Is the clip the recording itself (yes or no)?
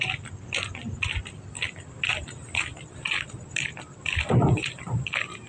yes